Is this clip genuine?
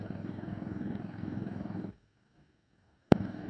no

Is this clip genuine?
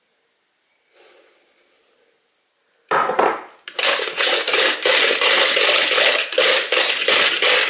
yes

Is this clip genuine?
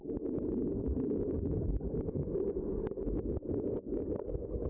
yes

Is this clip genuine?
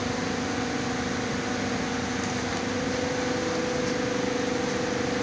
yes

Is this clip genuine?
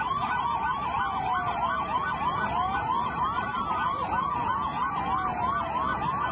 yes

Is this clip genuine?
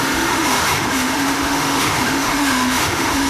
no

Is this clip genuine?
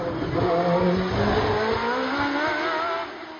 yes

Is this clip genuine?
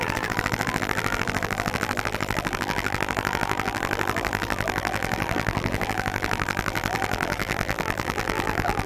no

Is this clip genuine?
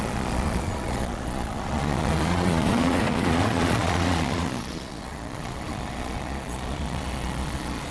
no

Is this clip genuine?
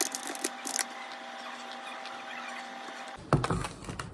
yes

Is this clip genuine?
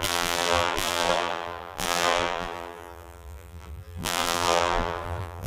no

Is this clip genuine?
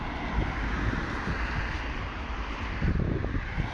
yes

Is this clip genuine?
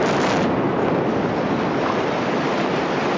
yes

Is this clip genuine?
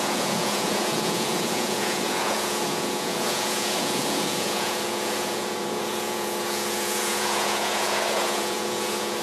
no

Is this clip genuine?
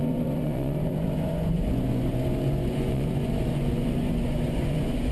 no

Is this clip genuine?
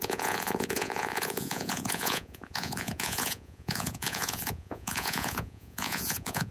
no